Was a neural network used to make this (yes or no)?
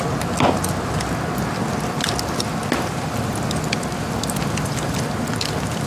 no